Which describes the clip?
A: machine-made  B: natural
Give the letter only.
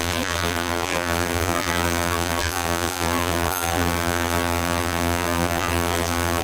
A